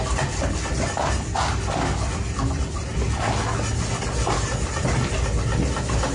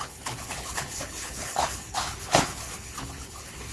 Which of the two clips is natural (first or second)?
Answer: first